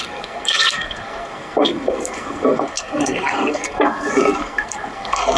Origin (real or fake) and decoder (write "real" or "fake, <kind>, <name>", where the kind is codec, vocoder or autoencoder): fake, codec, SNAC